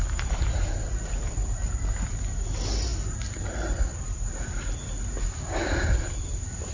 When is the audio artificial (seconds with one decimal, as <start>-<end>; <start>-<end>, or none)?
none

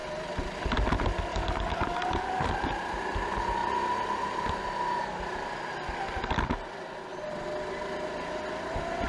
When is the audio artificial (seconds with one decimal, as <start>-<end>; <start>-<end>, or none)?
1.3-2.5

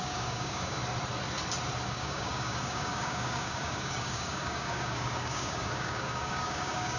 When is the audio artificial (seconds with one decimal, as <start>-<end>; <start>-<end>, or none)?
0.0-0.8; 1.9-7.0

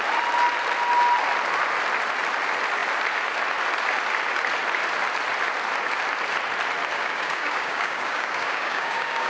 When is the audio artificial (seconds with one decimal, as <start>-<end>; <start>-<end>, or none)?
6.9-9.3

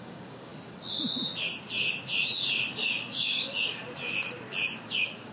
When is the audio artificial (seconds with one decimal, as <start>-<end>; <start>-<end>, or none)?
0.0-0.5; 2.7-3.8; 4.8-5.3

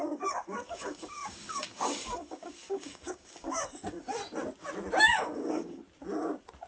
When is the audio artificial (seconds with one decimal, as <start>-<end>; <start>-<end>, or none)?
0.0-4.2; 5.0-5.8

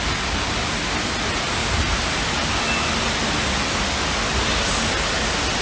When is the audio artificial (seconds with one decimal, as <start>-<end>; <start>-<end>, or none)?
none